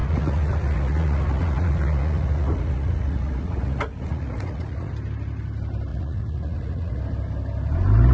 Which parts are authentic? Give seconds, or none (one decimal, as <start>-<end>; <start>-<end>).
4.9-5.9; 7.0-8.1